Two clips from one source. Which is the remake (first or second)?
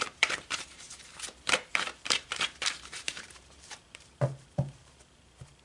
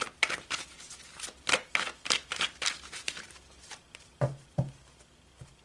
first